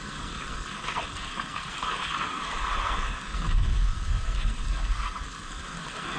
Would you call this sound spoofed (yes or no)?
yes